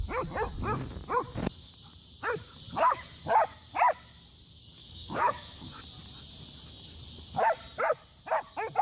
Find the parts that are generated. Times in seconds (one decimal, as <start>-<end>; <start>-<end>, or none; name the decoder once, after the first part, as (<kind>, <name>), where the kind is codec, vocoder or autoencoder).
4.8-5.7 (codec, DAC)